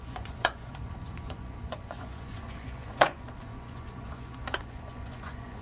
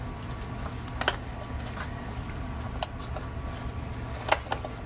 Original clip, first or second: second